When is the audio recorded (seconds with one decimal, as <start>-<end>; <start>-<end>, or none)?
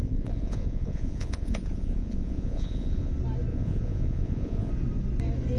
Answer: 3.1-3.5; 4.7-5.6